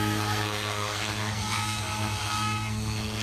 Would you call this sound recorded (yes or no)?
no